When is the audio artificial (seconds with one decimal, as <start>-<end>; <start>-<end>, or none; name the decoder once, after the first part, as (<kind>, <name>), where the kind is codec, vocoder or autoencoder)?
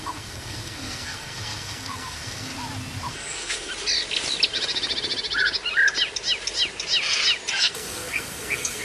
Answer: 0.0-2.5 (codec, SNAC); 3.1-3.7; 7.6-8.8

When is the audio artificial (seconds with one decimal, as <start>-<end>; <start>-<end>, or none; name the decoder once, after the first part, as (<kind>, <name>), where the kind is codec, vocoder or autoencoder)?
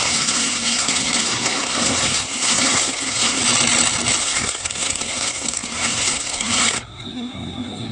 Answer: 0.0-3.4 (codec, SNAC); 4.2-7.9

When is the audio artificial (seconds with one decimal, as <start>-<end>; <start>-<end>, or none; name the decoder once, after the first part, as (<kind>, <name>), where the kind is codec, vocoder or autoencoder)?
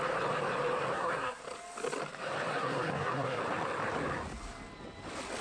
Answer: 0.9-1.4 (codec, SNAC); 2.5-3.4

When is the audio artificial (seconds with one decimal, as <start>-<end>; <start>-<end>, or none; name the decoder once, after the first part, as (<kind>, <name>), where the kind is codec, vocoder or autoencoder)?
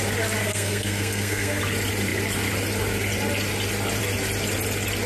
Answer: 0.4-1.6 (codec, SNAC)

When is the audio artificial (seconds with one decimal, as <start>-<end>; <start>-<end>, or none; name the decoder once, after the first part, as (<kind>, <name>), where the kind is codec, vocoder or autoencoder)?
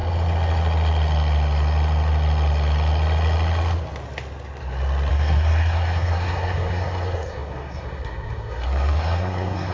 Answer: 5.1-9.7 (codec, SNAC)